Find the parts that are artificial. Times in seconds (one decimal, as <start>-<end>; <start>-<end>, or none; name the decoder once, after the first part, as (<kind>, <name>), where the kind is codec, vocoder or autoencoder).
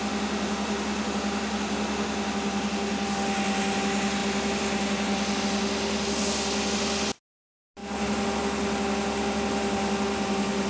none